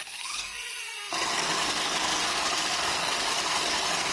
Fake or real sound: fake